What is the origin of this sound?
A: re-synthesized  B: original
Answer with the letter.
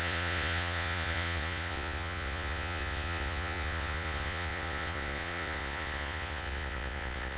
A